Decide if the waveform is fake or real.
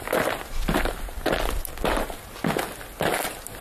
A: real